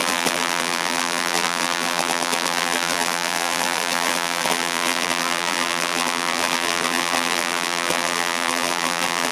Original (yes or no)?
no